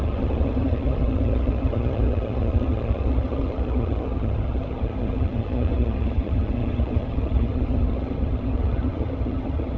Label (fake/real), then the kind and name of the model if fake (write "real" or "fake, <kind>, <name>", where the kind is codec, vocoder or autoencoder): fake, vocoder, HiFi-GAN